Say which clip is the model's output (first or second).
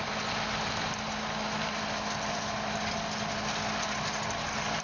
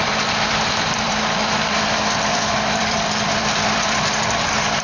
second